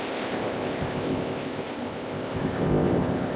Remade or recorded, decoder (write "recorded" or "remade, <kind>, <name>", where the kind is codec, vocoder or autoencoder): remade, codec, ZipCodec